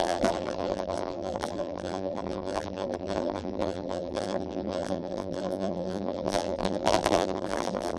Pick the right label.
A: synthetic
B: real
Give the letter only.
A